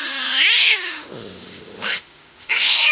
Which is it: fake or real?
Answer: fake